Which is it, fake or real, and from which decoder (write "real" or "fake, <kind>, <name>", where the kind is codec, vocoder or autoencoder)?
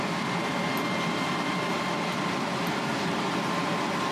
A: real